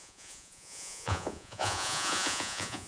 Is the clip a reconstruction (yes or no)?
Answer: yes